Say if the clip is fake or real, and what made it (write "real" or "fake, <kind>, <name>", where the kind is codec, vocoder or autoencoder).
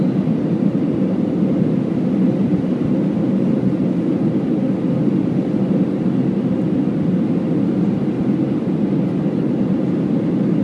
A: real